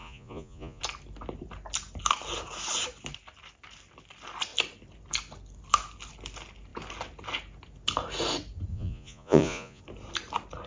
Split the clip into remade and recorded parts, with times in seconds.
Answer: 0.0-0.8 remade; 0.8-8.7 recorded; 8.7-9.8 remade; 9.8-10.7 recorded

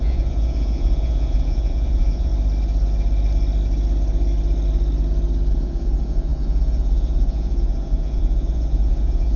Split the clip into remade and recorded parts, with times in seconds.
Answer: 0.0-2.3 remade; 2.3-5.5 recorded; 5.5-9.4 remade

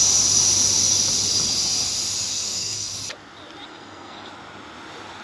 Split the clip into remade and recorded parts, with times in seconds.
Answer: 0.0-2.3 recorded; 2.3-2.9 remade; 2.9-3.7 recorded; 3.7-4.3 remade; 4.3-5.2 recorded

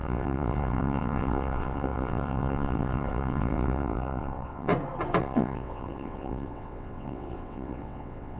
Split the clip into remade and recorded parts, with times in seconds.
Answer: 0.0-4.7 remade; 4.7-5.2 recorded; 5.2-8.4 remade